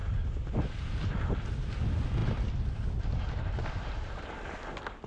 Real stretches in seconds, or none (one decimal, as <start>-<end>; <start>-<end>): 0.0-5.1